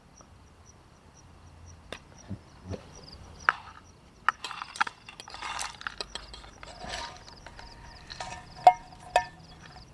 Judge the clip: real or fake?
real